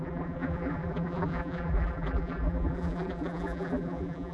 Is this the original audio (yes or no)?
no